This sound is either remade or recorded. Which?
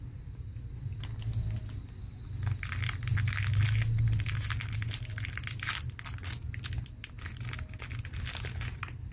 recorded